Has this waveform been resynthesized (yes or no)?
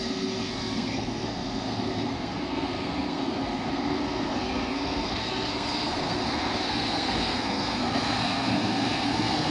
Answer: yes